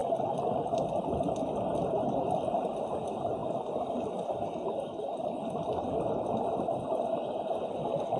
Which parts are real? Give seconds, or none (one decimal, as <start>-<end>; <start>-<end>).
0.0-8.2